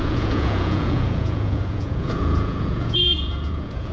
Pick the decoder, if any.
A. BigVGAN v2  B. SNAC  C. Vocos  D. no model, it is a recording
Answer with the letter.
C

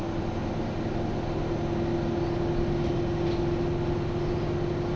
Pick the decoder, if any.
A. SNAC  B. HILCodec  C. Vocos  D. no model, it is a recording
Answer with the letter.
D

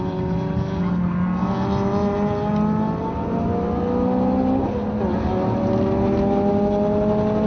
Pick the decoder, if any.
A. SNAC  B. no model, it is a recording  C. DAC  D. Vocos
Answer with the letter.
B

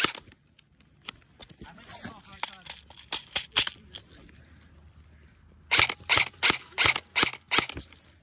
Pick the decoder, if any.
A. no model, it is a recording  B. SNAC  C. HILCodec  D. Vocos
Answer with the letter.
A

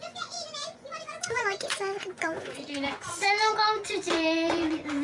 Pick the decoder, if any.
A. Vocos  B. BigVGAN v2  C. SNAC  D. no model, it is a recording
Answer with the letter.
A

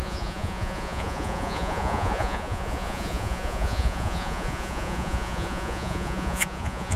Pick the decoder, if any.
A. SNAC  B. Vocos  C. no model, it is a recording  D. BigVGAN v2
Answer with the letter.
B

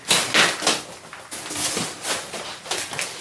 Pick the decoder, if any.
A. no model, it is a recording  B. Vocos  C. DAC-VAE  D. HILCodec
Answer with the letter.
A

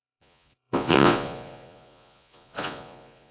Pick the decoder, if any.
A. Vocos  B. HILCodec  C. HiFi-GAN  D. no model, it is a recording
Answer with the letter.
A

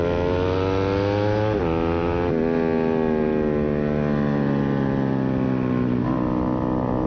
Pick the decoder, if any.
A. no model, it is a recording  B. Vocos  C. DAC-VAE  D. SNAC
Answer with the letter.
A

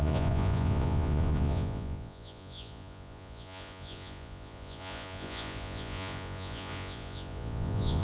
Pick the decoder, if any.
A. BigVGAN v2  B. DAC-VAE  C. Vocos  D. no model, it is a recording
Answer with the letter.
C